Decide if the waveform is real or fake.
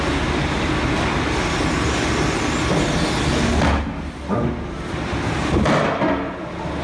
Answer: real